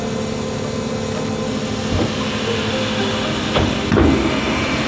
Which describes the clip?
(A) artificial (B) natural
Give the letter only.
B